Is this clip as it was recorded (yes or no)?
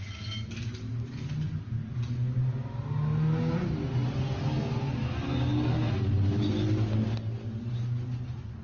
yes